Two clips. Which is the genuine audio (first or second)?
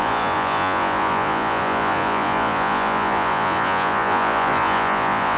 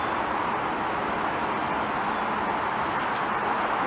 second